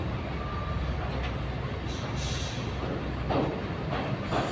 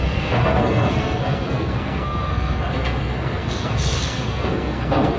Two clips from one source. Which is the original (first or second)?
first